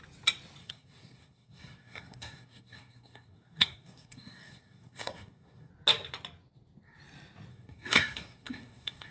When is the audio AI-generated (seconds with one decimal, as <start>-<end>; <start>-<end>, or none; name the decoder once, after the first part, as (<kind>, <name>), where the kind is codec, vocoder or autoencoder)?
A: 0.6-5.7 (codec, SNAC); 7.5-9.1